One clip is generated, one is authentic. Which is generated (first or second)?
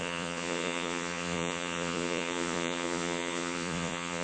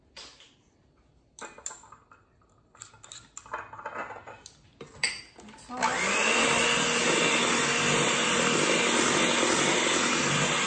first